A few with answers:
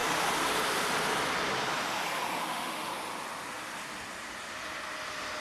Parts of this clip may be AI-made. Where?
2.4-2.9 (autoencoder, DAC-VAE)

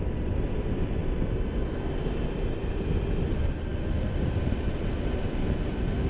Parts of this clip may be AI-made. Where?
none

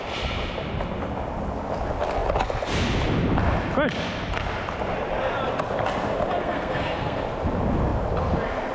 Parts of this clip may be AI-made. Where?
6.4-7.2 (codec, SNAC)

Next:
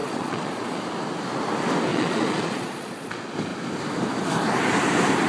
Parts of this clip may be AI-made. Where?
0.0-0.8 (vocoder, Vocos); 1.9-3.1

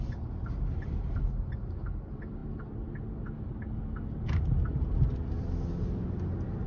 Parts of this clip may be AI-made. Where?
none